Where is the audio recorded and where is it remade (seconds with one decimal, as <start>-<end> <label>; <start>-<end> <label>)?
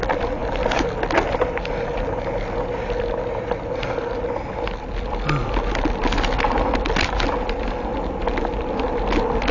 0.0-9.5 recorded